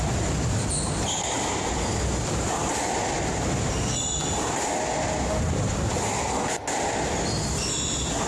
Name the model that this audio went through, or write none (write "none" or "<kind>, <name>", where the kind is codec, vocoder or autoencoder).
none